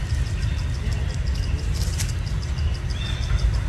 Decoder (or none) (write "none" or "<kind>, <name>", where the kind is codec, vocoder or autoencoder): none